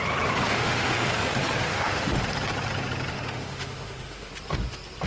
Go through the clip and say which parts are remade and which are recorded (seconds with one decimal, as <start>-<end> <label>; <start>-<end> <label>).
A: 0.0-0.5 recorded; 0.5-1.1 remade; 1.1-1.7 recorded; 1.7-2.2 remade; 2.2-3.1 recorded; 3.1-4.3 remade; 4.3-5.1 recorded